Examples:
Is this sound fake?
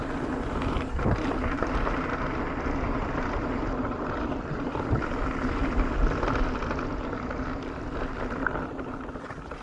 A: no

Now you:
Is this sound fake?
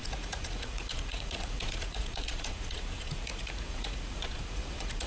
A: yes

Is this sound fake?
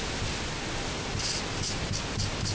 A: no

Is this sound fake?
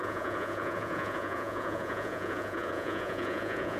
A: yes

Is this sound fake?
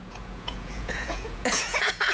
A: yes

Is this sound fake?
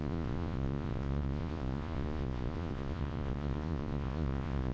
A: yes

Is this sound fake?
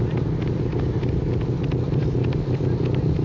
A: no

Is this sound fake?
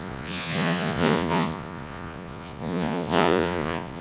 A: yes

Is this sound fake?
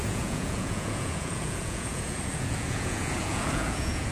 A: yes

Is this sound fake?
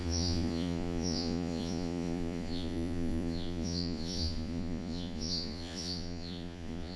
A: yes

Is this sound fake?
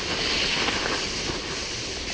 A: no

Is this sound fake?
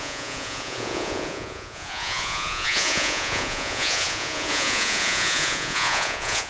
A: yes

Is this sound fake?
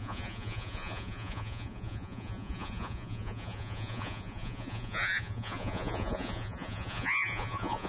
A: yes